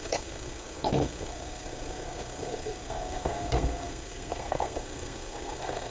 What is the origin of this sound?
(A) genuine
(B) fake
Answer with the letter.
B